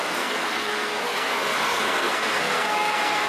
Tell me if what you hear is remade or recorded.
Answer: remade